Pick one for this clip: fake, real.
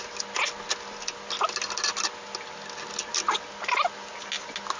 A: real